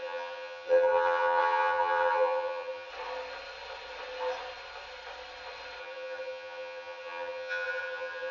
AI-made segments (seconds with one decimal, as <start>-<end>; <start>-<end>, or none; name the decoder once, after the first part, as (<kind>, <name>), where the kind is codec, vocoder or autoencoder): 0.0-2.9 (vocoder, HiFi-GAN); 5.8-8.3